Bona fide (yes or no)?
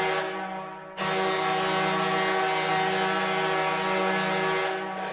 yes